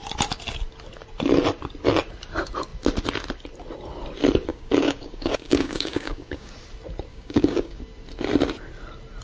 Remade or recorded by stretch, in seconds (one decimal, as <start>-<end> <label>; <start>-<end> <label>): 0.0-4.5 recorded; 4.5-6.5 remade; 6.5-7.1 recorded; 7.1-7.8 remade; 7.8-9.2 recorded